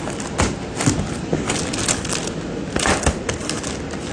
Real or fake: real